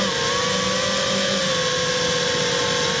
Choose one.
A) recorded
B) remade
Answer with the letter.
A